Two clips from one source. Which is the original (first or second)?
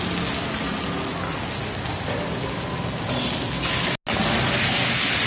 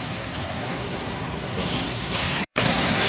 first